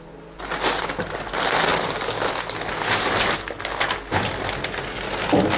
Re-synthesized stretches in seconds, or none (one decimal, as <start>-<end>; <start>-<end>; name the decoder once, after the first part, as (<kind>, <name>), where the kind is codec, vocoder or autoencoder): none